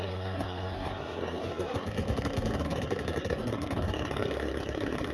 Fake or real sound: fake